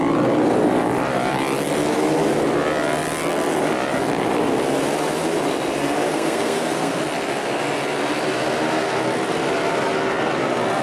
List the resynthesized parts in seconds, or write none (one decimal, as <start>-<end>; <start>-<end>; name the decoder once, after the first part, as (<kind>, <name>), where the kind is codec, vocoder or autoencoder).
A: 6.1-7.0 (codec, SNAC)

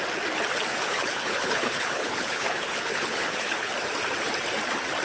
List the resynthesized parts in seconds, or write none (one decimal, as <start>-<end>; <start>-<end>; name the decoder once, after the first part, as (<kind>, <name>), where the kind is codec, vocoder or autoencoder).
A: 0.7-3.7 (codec, HILCodec)

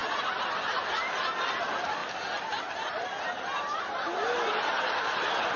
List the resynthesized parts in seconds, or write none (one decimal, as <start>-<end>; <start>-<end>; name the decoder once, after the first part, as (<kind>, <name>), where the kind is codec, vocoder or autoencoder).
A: none

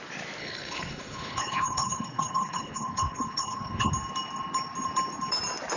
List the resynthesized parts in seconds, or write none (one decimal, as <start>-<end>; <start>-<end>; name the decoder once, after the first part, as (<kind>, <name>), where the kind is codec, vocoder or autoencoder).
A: 0.4-3.9 (codec, HILCodec)